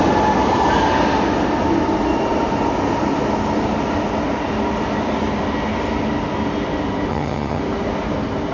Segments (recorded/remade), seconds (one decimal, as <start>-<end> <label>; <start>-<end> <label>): 0.0-7.1 recorded; 7.1-7.6 remade; 7.6-8.5 recorded